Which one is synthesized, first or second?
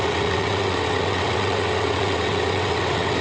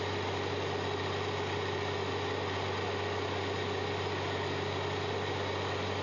first